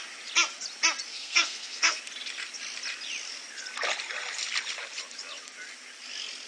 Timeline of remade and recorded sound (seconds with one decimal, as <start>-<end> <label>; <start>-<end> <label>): 0.0-1.1 recorded; 1.1-2.0 remade; 2.0-6.5 recorded